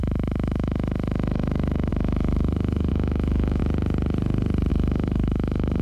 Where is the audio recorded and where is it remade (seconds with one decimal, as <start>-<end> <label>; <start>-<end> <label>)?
0.0-3.6 remade; 3.6-4.7 recorded; 4.7-5.8 remade